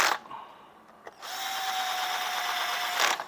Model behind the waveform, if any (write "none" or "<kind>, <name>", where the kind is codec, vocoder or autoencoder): none